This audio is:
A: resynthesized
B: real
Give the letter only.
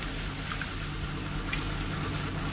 B